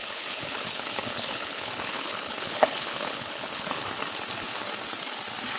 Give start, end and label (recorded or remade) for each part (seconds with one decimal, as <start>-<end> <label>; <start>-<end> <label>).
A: 0.0-3.8 remade; 3.8-5.6 recorded